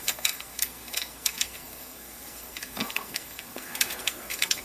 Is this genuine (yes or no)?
no